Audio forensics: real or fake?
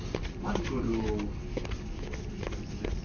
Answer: real